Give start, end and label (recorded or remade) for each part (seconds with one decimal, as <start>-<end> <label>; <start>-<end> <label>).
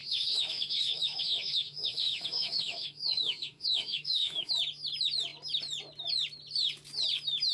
0.0-4.5 remade; 4.5-7.5 recorded